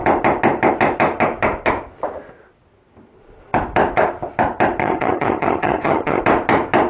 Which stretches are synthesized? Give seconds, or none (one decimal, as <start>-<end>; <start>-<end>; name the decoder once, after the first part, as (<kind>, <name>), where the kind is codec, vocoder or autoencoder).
4.8-6.2 (vocoder, HiFi-GAN)